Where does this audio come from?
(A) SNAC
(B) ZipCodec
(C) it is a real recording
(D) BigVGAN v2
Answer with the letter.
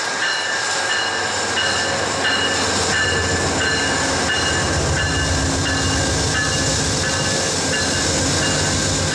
C